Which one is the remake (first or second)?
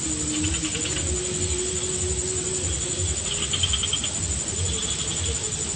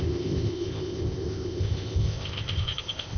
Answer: second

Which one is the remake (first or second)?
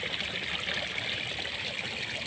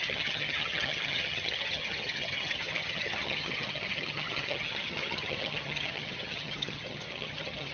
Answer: second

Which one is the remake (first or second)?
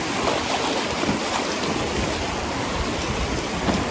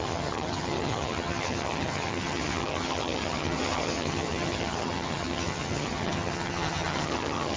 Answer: second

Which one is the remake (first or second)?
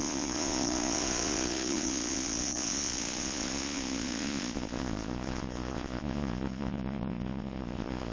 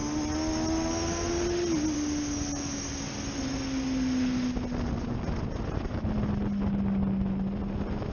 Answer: first